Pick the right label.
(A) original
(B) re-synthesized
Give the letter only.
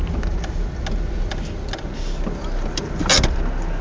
A